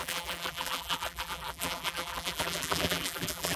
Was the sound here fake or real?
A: fake